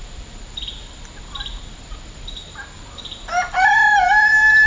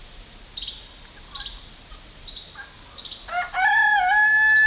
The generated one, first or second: first